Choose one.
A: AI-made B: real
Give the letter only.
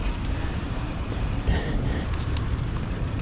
A